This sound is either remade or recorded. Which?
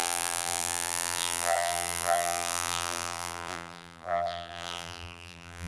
remade